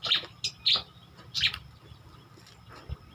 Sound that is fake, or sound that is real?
real